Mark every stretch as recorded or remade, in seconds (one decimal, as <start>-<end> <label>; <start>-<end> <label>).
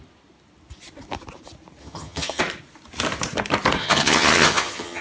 0.0-1.8 recorded; 1.8-2.4 remade; 2.4-3.8 recorded; 3.8-5.0 remade